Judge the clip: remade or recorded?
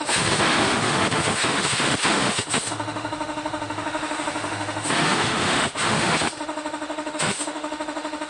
remade